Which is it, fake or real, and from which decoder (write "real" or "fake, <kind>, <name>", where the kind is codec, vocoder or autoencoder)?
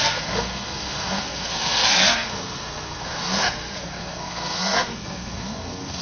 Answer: fake, codec, SNAC